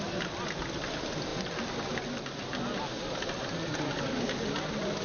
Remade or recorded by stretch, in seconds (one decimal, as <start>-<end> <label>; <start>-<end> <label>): 0.0-5.0 recorded